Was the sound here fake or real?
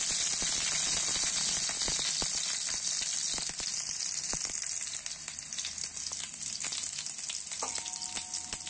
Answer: real